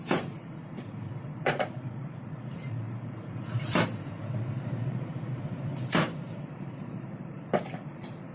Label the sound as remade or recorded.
remade